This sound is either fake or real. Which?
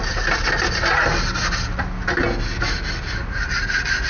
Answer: real